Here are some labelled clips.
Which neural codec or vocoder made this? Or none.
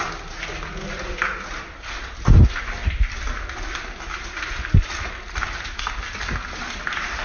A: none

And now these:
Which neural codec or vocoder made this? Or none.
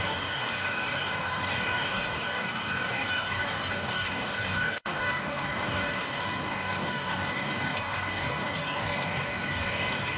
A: codec, DAC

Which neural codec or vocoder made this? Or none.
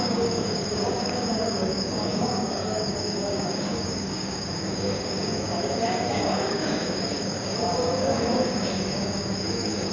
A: codec, DAC